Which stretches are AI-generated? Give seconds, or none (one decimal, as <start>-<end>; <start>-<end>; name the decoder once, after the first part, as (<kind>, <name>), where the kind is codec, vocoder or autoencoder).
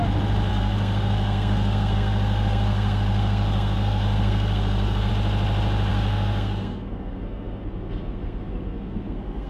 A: 0.5-5.1 (codec, SNAC); 5.9-9.5